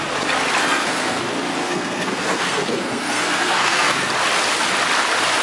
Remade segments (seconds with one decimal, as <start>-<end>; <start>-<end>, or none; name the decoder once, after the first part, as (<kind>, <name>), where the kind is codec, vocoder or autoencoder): 0.6-1.2 (codec, SNAC); 1.6-4.1